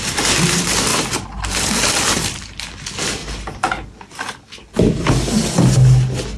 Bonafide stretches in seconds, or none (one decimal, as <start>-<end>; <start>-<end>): 0.0-6.4